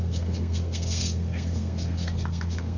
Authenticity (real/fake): fake